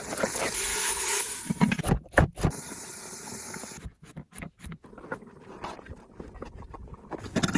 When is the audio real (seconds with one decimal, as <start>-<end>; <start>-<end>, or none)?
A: 0.0-0.7; 1.5-7.6